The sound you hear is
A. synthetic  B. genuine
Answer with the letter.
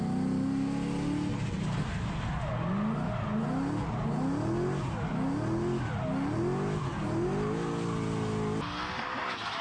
B